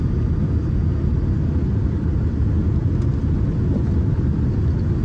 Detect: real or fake real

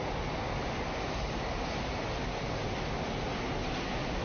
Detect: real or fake real